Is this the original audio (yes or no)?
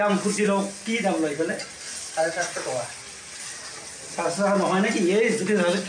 yes